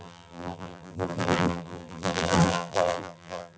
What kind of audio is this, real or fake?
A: fake